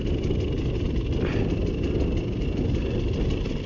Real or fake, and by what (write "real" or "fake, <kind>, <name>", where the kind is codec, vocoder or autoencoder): real